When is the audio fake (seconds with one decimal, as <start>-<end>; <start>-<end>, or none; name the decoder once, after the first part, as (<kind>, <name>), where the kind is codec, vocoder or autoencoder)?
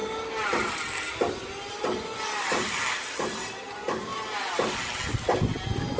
1.8-4.1 (vocoder, BigVGAN v2)